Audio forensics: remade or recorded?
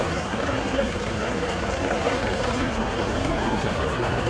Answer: remade